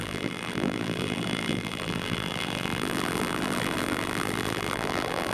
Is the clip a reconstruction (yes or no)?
yes